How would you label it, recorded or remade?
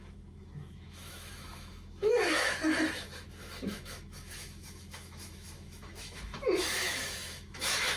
remade